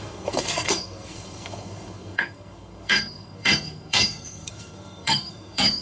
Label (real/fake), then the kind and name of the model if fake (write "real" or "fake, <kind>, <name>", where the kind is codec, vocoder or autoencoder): fake, codec, SNAC